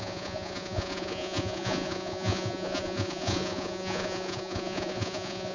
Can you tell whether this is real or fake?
fake